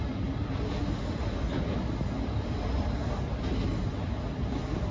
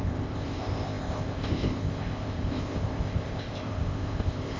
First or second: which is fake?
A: second